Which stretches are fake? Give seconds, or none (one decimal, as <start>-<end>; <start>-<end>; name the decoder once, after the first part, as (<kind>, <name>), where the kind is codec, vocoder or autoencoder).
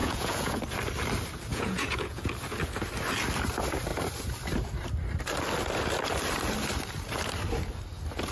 0.0-0.6 (vocoder, Vocos); 1.5-2.3